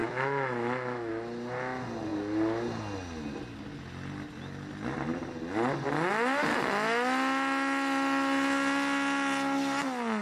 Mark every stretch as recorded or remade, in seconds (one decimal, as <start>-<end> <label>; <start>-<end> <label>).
0.0-1.1 remade; 1.1-10.2 recorded